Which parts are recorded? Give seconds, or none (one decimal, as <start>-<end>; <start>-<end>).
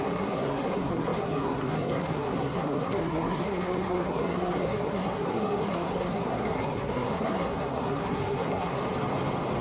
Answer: 8.8-9.6